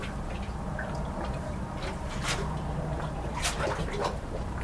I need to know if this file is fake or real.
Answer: real